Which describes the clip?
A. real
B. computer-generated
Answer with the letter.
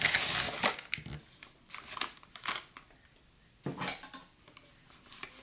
A